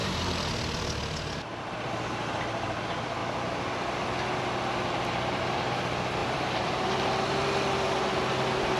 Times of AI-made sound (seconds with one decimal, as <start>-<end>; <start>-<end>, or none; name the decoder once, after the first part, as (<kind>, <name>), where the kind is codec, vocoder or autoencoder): 0.0-0.5 (vocoder, BigVGAN v2); 6.2-6.9